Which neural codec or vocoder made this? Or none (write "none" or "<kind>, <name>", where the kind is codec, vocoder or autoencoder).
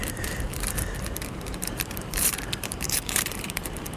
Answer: vocoder, BigVGAN v2